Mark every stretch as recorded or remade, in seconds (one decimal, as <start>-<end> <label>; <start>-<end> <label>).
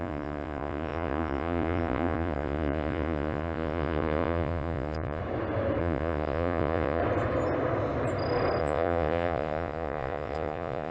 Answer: 0.0-5.2 remade; 5.2-5.8 recorded; 5.8-7.0 remade; 7.0-8.6 recorded; 8.6-10.9 remade